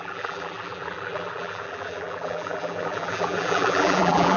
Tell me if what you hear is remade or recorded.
remade